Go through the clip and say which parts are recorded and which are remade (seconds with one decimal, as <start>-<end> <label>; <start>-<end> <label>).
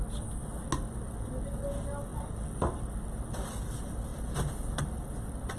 0.0-5.6 recorded